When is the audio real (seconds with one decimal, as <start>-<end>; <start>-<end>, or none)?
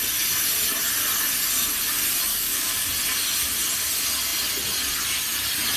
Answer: 0.0-2.3; 2.9-5.8